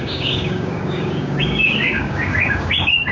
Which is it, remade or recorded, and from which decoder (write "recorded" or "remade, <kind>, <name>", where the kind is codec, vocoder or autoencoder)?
remade, codec, DAC